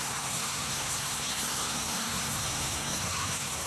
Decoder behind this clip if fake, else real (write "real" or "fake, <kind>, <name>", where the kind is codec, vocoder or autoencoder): fake, codec, SNAC